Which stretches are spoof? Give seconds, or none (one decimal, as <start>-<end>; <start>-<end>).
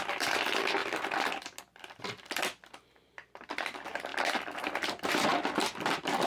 0.0-0.8; 1.6-4.1; 5.1-6.3